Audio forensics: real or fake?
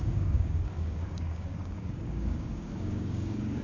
fake